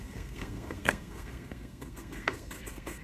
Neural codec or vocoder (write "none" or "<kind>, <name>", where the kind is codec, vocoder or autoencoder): codec, SNAC